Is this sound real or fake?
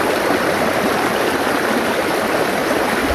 fake